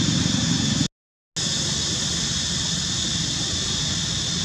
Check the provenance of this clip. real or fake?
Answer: real